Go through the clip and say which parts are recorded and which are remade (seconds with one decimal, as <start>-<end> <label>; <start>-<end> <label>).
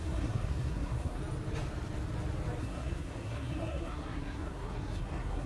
0.0-1.2 remade; 1.2-2.6 recorded; 2.6-5.5 remade